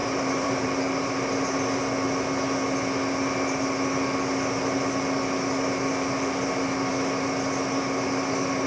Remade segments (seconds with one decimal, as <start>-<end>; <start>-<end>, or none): 0.0-0.8